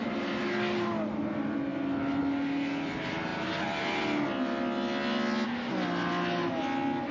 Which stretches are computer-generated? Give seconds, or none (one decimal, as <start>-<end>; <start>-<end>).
none